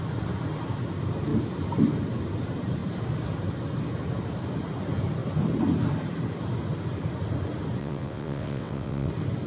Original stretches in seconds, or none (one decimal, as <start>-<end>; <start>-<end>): 0.0-7.8; 9.1-9.5